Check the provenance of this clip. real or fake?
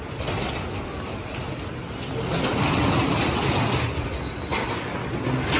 real